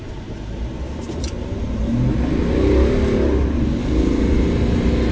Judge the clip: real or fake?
real